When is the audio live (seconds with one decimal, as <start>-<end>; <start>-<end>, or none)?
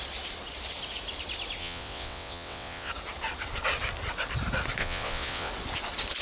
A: 0.0-1.6; 2.9-4.8; 5.5-6.2